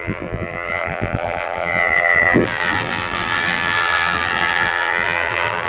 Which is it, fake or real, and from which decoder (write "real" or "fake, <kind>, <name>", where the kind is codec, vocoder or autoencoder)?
fake, vocoder, BigVGAN v2